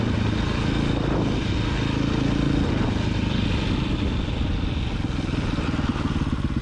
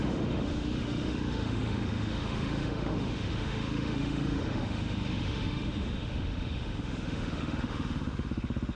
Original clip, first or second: first